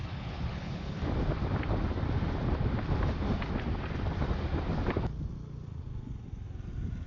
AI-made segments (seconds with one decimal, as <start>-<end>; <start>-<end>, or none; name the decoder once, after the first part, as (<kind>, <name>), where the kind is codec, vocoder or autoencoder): 0.0-1.0 (codec, HILCodec)